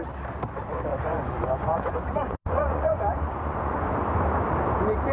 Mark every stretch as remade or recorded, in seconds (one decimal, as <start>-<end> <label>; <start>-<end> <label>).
0.0-0.9 recorded; 0.9-3.9 remade; 3.9-5.1 recorded